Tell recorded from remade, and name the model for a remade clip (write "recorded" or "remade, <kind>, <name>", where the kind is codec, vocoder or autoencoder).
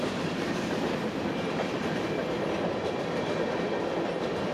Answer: remade, vocoder, BigVGAN v2